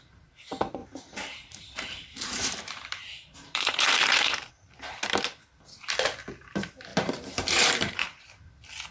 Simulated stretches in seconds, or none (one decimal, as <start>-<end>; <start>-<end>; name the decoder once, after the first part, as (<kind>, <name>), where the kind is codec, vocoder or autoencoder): 0.8-4.5 (vocoder, BigVGAN v2); 6.9-8.2